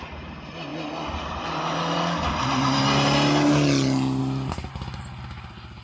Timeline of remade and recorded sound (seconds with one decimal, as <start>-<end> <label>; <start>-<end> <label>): 0.0-5.8 recorded

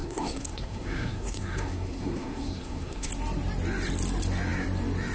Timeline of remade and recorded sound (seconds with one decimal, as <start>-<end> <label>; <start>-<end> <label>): 0.0-3.1 remade; 3.1-5.1 recorded

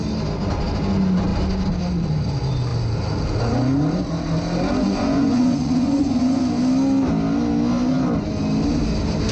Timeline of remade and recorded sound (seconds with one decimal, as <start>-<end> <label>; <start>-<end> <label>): 0.0-4.8 recorded; 4.8-6.4 remade; 6.4-9.3 recorded

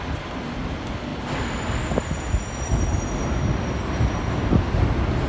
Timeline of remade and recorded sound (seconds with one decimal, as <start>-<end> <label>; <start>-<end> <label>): 0.0-5.3 recorded